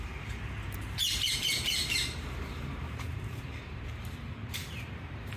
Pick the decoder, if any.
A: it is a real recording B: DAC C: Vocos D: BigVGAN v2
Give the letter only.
D